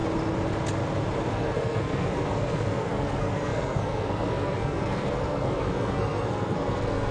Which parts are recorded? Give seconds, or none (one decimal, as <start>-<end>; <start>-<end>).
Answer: 0.0-1.3